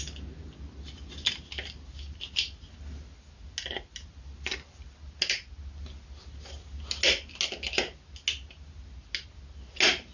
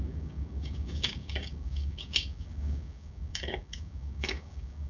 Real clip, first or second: first